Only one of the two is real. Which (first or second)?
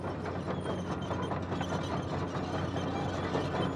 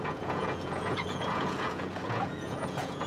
first